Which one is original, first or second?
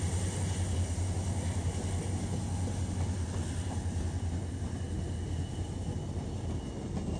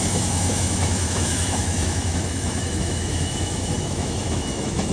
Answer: first